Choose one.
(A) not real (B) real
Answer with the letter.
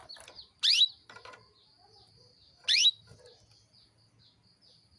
B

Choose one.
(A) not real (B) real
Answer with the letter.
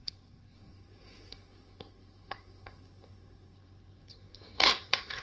A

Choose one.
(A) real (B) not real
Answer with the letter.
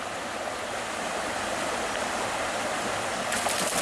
A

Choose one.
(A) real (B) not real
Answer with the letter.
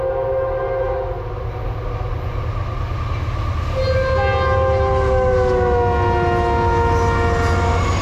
A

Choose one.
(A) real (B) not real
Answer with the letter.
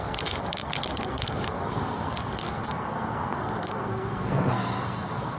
B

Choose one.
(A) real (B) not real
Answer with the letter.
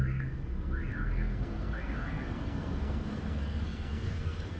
B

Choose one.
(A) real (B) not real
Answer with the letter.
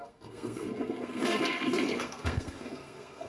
B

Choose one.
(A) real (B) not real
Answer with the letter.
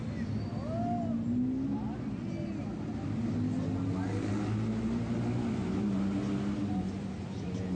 A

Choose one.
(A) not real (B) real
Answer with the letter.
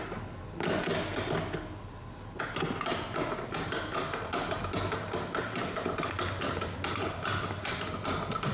B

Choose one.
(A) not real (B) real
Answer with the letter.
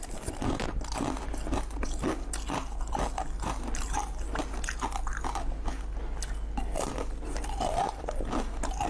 B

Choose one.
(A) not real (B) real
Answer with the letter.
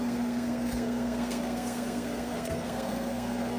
A